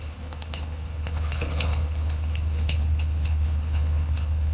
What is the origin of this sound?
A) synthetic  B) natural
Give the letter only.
A